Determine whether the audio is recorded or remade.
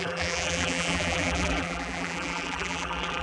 remade